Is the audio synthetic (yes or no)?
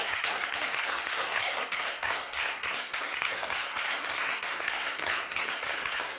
yes